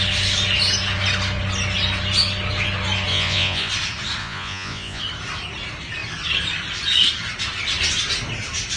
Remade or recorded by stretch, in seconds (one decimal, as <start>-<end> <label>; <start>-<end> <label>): 0.0-3.1 recorded; 3.1-3.7 remade; 3.7-4.2 recorded; 4.2-5.0 remade; 5.0-8.8 recorded